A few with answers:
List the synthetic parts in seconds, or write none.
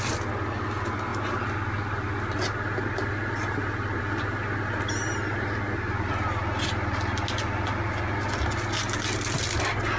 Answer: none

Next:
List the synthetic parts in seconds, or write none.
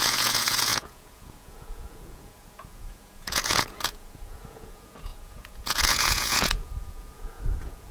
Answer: 0.0-7.9 (vocoder, Vocos)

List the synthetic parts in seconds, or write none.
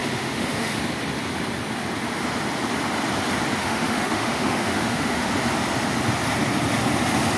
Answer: 0.0-0.8 (autoencoder, DAC-VAE); 3.6-5.3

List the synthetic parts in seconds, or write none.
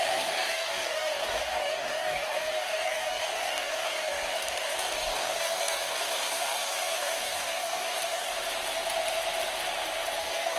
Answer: 0.0-8.3 (codec, DAC); 10.2-10.6